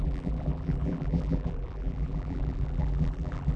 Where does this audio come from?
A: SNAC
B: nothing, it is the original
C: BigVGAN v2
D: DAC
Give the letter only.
C